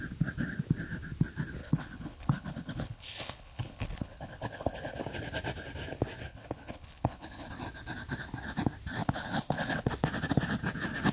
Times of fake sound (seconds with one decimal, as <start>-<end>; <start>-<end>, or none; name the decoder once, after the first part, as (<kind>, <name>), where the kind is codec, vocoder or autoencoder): 1.6-5.0 (codec, HILCodec); 6.3-7.5; 9.0-9.9